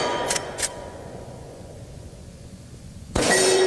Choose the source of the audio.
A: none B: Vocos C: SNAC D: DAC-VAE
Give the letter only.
B